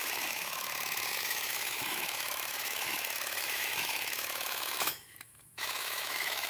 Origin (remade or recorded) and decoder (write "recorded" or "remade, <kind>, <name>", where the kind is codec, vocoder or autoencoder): remade, autoencoder, DAC-VAE